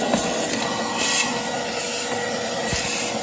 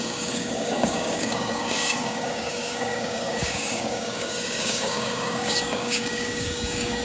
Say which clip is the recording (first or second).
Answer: first